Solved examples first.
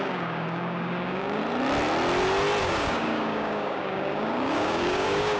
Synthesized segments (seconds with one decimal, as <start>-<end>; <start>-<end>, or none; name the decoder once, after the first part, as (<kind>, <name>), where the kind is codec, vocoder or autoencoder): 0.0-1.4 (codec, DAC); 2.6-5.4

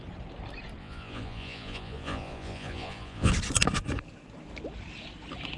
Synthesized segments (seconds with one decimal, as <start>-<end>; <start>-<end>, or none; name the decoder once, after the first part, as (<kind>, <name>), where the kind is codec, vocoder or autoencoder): 0.8-3.3 (vocoder, Vocos)

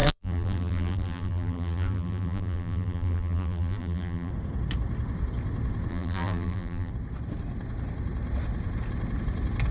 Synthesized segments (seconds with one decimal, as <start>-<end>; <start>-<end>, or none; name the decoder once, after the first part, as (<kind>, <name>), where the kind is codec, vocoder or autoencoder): 0.0-4.3 (vocoder, BigVGAN v2); 5.9-6.9

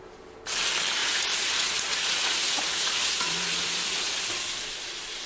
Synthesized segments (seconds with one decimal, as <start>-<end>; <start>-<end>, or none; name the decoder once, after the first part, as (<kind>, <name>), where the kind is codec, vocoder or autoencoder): 1.0-4.2 (vocoder, Vocos)

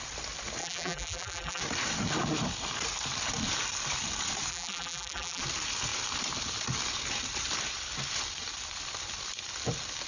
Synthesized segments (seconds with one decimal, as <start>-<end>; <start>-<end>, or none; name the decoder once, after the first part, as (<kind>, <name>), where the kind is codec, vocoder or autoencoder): 0.6-1.6 (vocoder, BigVGAN v2); 4.5-5.4